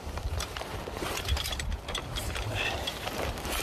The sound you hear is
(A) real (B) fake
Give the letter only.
B